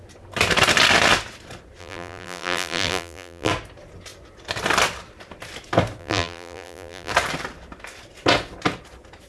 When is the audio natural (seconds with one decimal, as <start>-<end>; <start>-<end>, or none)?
0.0-1.8; 3.5-6.0; 7.1-9.3